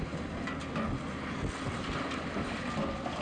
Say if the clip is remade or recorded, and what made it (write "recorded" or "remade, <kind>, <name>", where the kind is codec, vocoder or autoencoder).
recorded